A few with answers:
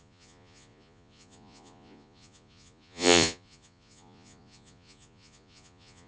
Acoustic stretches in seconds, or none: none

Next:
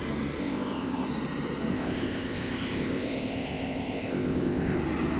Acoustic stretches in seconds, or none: 0.0-0.4; 1.1-1.7; 4.8-5.2

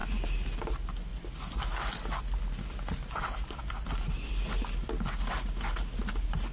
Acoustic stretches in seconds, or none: 0.0-6.5

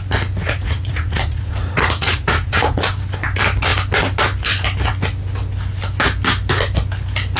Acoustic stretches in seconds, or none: 0.0-0.4; 2.8-7.4

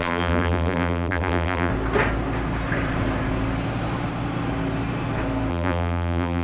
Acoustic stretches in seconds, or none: 1.7-5.5

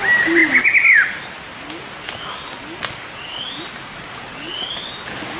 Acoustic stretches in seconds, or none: 0.0-5.4